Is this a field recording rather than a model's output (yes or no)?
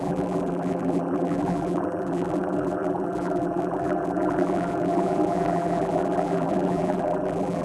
no